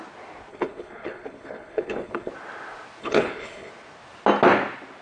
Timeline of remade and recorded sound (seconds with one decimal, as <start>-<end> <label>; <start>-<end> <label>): 0.0-0.5 recorded; 0.5-2.3 remade; 2.3-3.0 recorded; 3.0-3.7 remade; 3.7-5.0 recorded